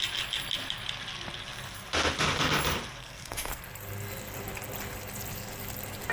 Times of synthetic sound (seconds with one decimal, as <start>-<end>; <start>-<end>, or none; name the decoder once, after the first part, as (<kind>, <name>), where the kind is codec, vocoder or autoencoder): 3.0-3.6 (codec, SNAC)